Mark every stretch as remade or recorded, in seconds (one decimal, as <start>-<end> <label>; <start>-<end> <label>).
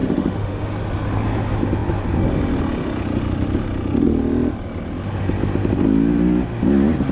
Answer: 0.0-0.7 remade; 0.7-7.1 recorded